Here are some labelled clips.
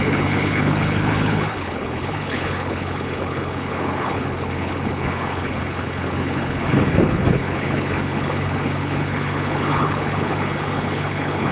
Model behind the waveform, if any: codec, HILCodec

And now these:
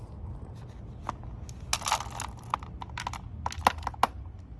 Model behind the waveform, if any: none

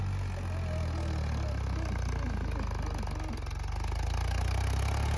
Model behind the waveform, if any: none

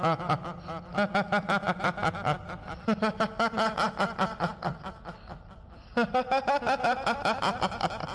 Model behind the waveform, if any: none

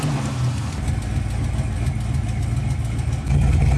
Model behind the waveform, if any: none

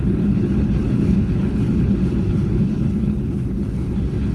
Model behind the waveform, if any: codec, HILCodec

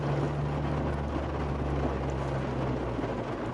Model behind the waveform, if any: none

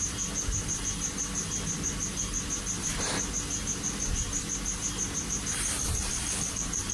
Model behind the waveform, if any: none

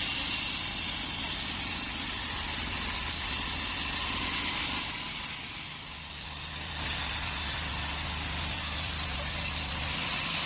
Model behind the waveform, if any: none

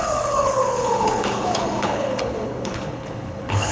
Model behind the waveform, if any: codec, HILCodec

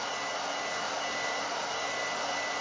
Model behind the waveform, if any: none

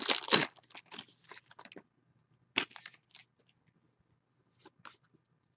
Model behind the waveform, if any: none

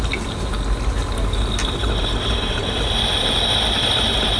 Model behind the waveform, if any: none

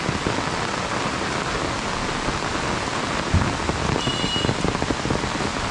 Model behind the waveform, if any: none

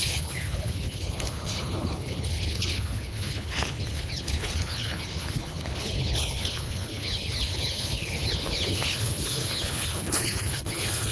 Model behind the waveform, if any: codec, HILCodec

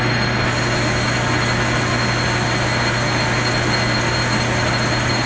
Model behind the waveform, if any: none